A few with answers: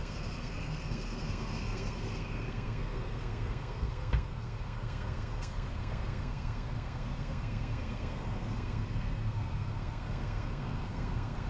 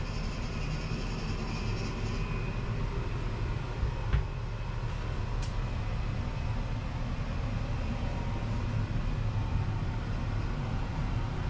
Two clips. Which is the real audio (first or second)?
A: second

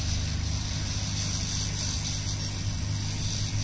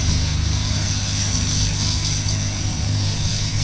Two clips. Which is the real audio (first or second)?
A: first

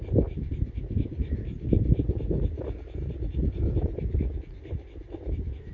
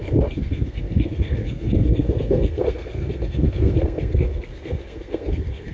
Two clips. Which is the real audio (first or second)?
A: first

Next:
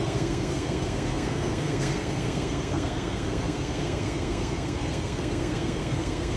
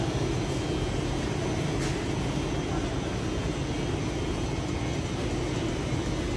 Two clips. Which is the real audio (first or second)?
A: second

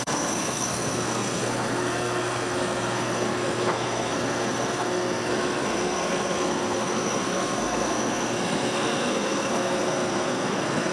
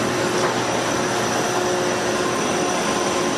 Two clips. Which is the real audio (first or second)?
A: second